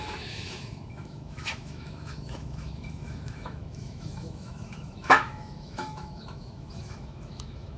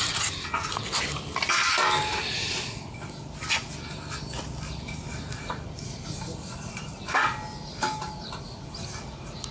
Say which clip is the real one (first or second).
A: second